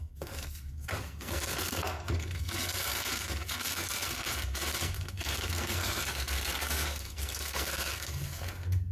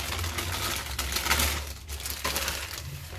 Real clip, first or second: second